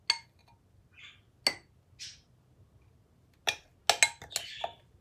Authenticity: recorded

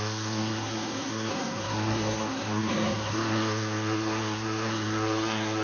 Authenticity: remade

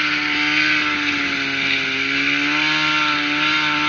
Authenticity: recorded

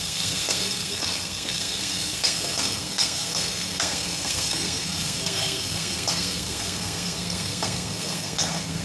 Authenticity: remade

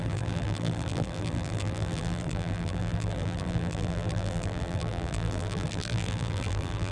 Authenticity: remade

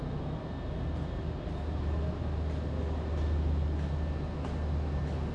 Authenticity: recorded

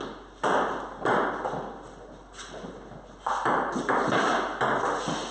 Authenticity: recorded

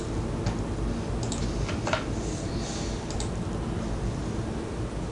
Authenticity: recorded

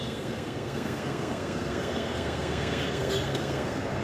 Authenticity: remade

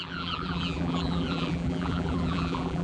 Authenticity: remade